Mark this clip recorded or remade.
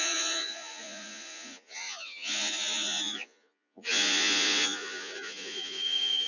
remade